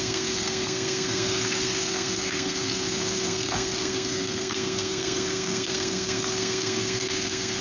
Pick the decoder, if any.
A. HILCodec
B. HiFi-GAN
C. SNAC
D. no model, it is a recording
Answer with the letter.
C